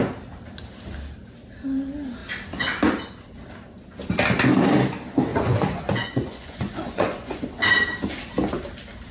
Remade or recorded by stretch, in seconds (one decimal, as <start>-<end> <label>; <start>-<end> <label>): 0.0-5.3 recorded; 5.3-7.5 remade; 7.5-9.1 recorded